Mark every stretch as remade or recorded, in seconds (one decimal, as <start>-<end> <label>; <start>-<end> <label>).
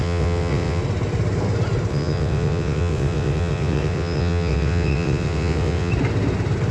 0.0-0.8 remade; 0.8-1.9 recorded; 1.9-5.9 remade; 5.9-6.7 recorded